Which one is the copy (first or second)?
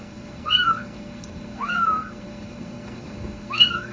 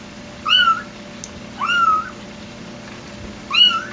first